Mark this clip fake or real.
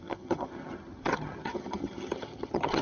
fake